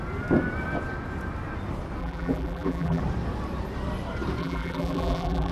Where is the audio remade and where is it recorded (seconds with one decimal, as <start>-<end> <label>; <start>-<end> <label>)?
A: 0.0-2.0 recorded; 2.0-3.0 remade; 3.0-4.4 recorded; 4.4-5.5 remade